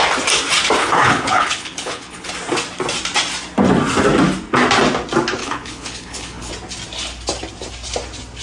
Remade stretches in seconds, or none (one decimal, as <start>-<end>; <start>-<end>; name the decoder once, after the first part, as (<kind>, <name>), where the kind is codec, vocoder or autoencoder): 0.8-2.3 (codec, HILCodec); 5.4-6.5